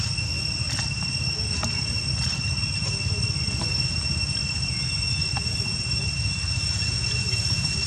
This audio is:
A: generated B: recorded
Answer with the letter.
B